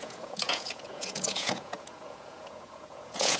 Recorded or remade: remade